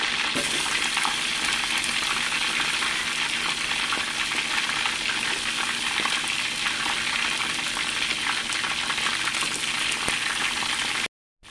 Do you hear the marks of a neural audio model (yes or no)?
no